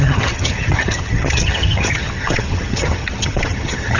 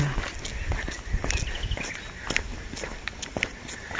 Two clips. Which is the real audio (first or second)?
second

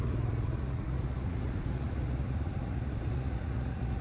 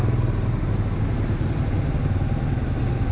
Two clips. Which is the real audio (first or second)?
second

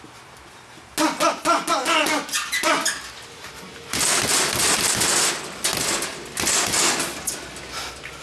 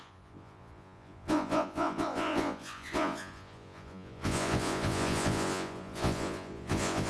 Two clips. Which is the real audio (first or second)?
first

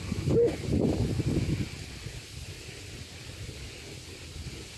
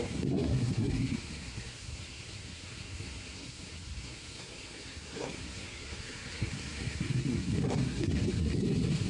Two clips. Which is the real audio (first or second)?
first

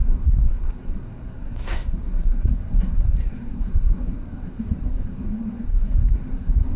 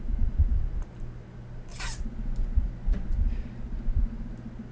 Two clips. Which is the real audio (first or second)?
second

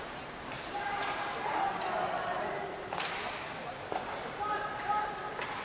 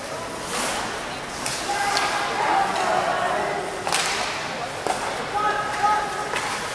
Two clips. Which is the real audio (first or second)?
second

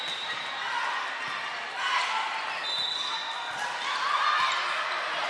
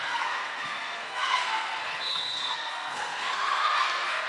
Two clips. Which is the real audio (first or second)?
first